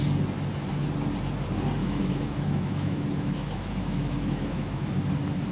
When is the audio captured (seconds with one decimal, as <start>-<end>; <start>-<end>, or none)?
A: 0.0-1.8; 4.9-5.5